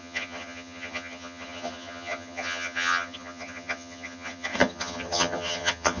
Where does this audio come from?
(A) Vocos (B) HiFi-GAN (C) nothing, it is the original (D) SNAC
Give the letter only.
B